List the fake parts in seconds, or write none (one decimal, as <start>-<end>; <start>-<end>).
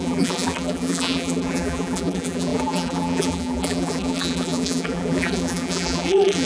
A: 0.0-6.5